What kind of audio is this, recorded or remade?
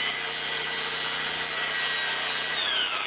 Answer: remade